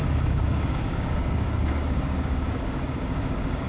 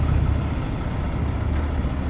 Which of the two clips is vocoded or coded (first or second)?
first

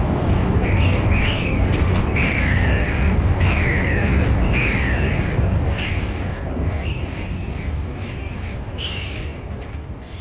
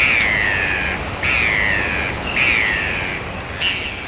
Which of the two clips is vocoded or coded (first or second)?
first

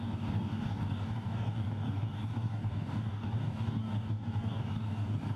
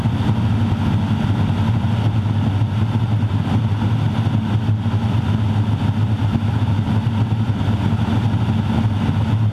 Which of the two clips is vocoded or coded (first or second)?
first